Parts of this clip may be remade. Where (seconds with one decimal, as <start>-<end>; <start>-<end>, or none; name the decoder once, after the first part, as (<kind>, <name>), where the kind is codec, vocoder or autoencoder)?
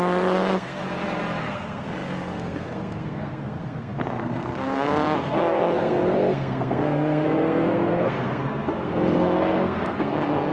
0.0-0.8 (codec, SNAC); 1.4-10.5